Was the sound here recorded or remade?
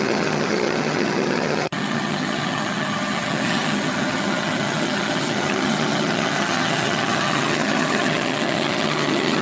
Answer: remade